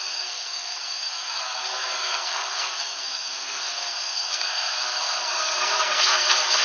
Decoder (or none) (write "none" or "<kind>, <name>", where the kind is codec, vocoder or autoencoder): codec, SNAC